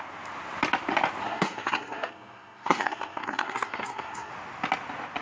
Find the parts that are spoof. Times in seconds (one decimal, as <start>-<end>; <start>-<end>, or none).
1.2-4.3